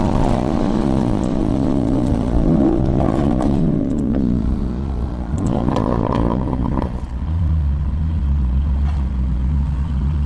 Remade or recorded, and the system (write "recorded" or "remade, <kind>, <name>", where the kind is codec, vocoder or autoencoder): remade, vocoder, Vocos